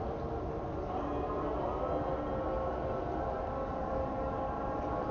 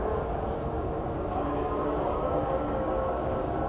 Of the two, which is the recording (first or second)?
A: first